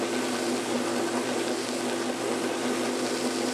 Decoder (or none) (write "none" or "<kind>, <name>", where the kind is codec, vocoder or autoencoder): none